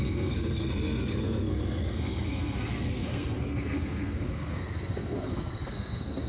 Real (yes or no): no